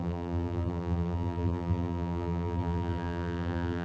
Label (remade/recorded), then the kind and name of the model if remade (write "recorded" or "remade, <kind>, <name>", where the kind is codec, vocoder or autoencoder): remade, vocoder, BigVGAN v2